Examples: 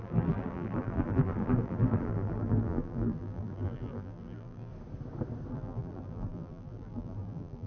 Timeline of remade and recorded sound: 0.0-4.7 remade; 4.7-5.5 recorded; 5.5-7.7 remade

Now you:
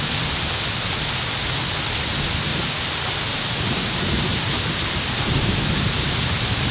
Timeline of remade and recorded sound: 0.0-2.5 recorded; 2.5-6.7 remade

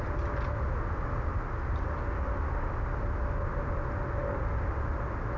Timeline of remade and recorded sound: 0.0-5.4 recorded

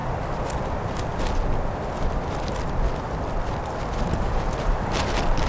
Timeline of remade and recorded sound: 0.0-1.2 remade; 1.2-5.5 recorded

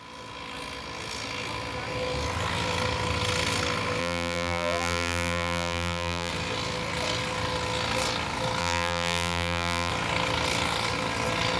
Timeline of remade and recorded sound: 0.0-4.0 recorded; 4.0-6.3 remade; 6.3-8.6 recorded; 8.6-9.9 remade; 9.9-11.6 recorded

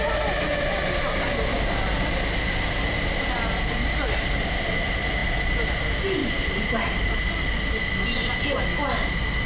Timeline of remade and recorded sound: 0.0-6.2 recorded; 6.2-7.3 remade; 7.3-9.5 recorded